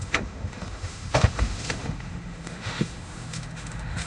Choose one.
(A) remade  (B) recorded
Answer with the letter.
A